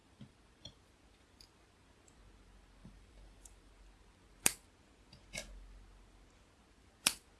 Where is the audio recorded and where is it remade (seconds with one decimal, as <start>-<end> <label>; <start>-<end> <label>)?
0.0-0.9 remade; 0.9-2.8 recorded; 2.8-3.7 remade; 3.7-7.4 recorded